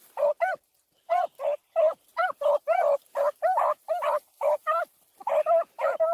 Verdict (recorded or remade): recorded